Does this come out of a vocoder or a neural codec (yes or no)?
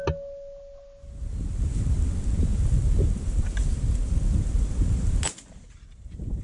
no